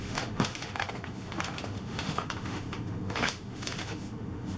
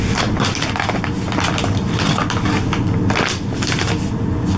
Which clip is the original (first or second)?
second